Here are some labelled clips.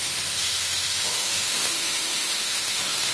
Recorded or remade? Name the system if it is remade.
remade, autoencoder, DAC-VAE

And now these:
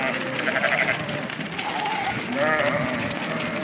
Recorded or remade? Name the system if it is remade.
recorded